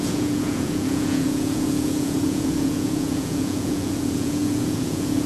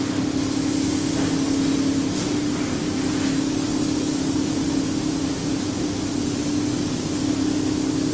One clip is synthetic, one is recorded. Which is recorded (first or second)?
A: second